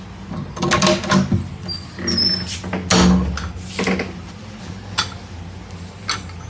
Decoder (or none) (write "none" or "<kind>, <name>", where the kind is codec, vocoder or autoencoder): none